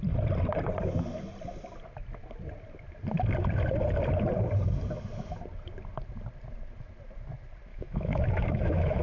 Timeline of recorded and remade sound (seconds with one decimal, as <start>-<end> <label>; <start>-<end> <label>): 0.0-7.7 recorded; 7.7-9.0 remade